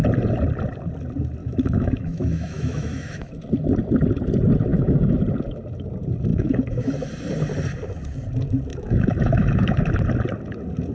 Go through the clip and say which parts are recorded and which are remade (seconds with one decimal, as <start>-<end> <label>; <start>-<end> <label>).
0.0-1.4 recorded; 1.4-3.3 remade; 3.3-4.7 recorded; 4.7-5.2 remade; 5.2-6.3 recorded; 6.3-6.9 remade; 6.9-8.7 recorded; 8.7-9.9 remade; 9.9-10.9 recorded